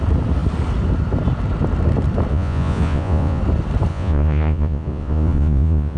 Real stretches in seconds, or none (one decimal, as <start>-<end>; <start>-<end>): 0.0-2.3; 3.4-3.9